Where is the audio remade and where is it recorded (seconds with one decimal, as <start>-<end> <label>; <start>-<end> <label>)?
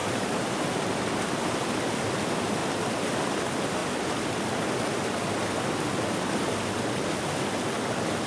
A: 0.0-1.6 remade; 1.6-3.8 recorded; 3.8-5.0 remade; 5.0-8.3 recorded